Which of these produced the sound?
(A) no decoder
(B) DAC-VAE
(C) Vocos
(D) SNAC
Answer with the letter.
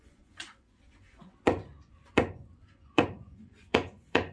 C